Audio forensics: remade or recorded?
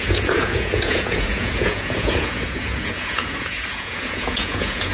remade